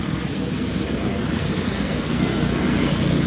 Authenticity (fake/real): fake